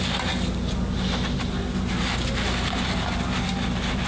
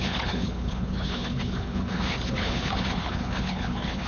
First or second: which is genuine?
first